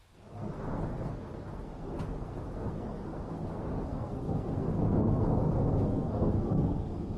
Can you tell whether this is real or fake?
fake